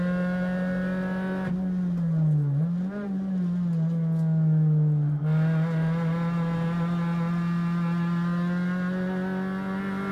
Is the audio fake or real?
real